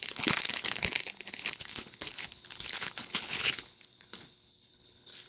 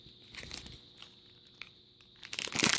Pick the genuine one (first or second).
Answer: second